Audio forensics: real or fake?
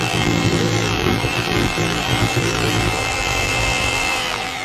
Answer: fake